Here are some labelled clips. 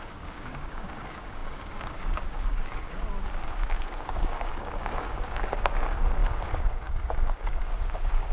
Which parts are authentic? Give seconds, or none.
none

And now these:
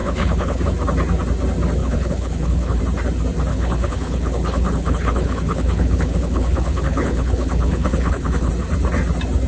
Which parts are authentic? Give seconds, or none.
0.6-1.8; 2.8-3.5; 8.5-9.5

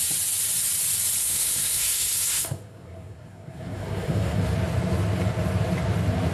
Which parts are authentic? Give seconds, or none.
0.0-1.2; 4.4-6.3

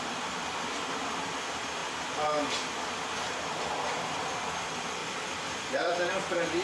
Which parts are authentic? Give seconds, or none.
0.0-1.8; 4.6-5.0; 6.1-6.6